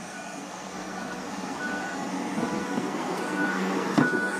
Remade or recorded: remade